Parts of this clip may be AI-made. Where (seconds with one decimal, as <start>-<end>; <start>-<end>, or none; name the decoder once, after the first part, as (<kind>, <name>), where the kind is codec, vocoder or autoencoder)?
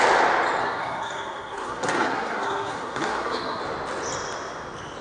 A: 0.6-3.6 (codec, SNAC)